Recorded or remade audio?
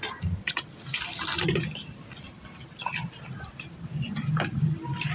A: recorded